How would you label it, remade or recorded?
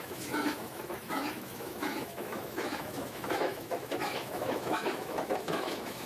remade